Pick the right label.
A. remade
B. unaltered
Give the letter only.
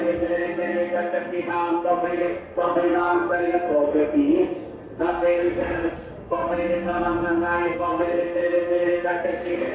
A